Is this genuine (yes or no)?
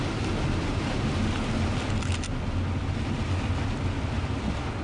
yes